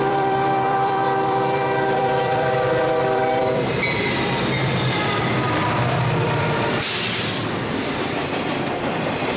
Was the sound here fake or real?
fake